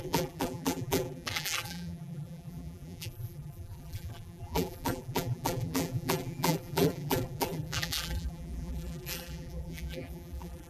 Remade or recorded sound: remade